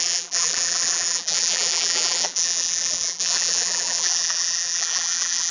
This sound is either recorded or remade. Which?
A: remade